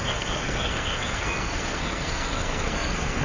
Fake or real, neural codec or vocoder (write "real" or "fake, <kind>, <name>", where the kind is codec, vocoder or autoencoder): fake, codec, SNAC